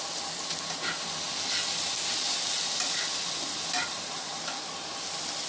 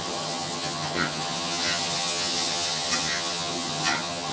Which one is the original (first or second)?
first